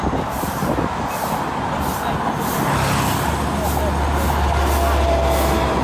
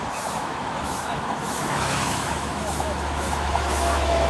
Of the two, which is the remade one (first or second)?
second